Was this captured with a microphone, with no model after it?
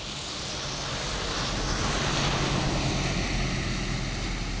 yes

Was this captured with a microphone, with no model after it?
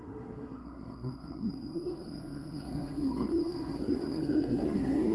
no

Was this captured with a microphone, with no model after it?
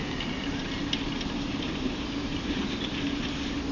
yes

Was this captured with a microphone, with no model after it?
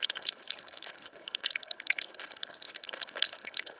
no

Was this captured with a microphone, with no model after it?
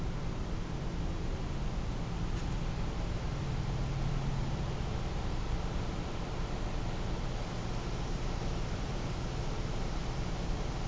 yes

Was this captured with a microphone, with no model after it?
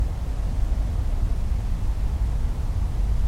yes